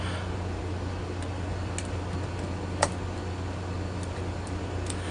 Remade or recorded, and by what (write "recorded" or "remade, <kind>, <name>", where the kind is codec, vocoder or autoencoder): recorded